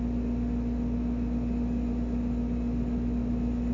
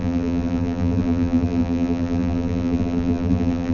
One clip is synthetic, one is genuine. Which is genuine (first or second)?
first